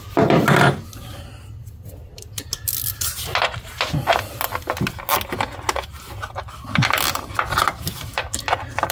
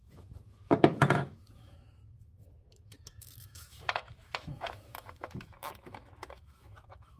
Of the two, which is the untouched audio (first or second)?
first